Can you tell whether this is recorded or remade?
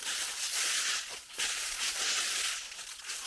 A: remade